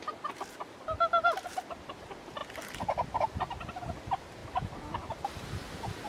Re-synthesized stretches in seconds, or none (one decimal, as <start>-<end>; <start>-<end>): 0.0-2.4; 3.2-4.4